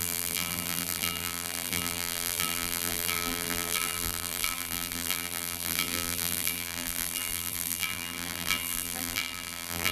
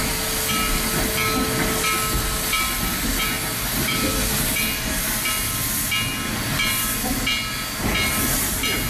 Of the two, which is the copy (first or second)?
first